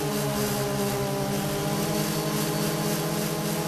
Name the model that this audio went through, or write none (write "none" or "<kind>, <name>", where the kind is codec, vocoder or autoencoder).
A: none